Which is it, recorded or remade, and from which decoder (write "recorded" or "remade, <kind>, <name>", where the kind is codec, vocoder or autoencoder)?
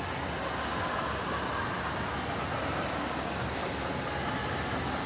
recorded